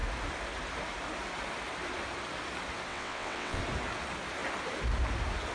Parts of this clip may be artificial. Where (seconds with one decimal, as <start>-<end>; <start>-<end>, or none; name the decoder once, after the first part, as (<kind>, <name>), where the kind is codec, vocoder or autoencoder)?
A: 2.9-3.6 (vocoder, WaveNeXt)